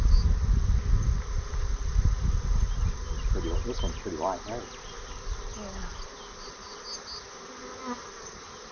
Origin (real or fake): real